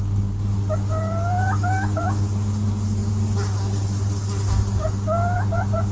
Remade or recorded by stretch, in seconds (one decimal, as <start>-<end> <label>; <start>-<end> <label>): 0.0-5.9 recorded